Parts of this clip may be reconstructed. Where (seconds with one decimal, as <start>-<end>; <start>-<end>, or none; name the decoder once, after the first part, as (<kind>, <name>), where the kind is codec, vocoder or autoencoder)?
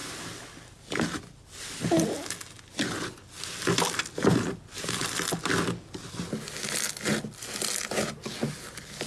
none